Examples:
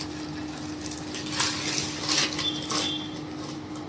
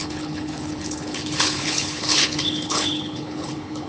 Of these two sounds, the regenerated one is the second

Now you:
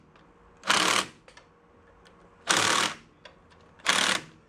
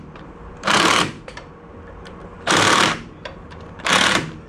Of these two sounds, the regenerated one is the second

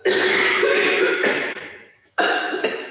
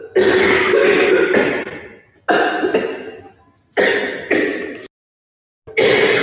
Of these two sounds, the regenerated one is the first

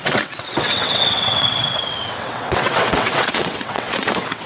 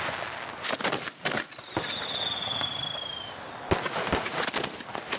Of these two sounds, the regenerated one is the first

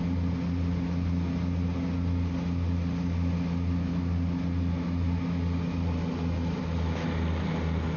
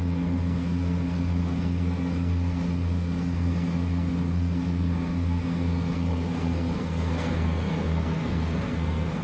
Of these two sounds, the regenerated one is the second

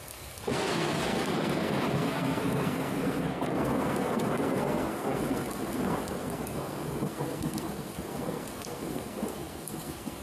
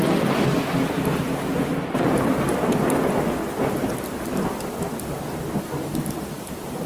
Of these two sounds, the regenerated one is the first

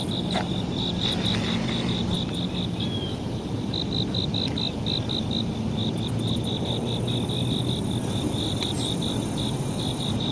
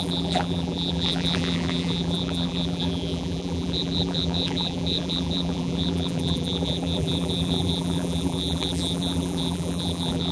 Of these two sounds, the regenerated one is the second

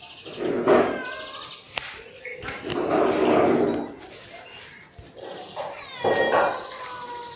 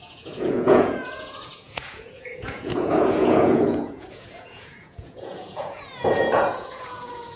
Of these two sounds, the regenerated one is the second